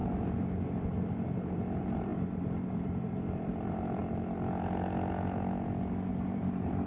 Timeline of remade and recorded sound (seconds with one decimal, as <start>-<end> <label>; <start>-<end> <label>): 0.0-1.1 recorded; 1.1-4.0 remade; 4.0-6.1 recorded; 6.1-6.9 remade